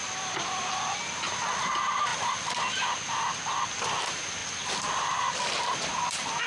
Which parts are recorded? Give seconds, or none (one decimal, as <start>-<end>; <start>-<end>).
0.0-6.5